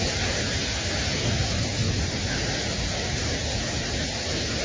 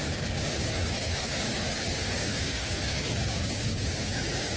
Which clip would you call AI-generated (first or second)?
second